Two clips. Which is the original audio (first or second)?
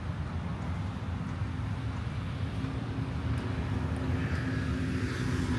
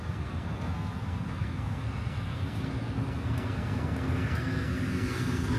first